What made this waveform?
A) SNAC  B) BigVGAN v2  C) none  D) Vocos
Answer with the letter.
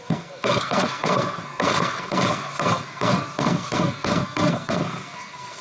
A